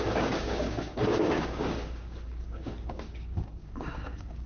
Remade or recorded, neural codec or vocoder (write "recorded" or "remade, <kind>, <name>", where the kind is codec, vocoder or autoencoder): remade, codec, DAC